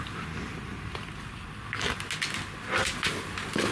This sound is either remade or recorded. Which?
recorded